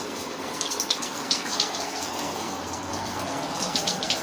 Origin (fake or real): fake